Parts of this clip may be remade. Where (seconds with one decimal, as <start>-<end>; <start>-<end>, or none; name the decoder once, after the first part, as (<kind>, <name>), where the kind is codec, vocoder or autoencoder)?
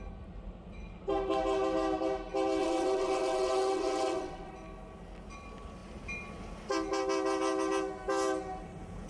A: 2.6-4.5 (vocoder, WaveNeXt)